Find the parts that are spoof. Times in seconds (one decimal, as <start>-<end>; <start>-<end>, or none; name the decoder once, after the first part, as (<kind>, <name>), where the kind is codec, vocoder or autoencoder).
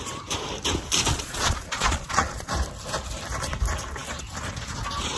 1.1-2.5 (vocoder, Vocos)